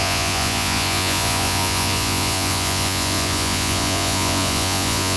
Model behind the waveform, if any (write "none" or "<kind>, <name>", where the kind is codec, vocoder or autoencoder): vocoder, Vocos